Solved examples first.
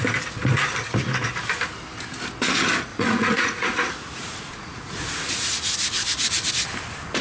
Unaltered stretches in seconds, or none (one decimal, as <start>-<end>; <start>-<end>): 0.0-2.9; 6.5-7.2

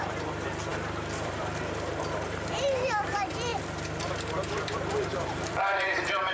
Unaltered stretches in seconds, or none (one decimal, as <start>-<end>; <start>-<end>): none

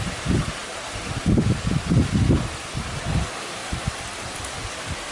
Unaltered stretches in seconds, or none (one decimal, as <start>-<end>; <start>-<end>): 0.0-5.1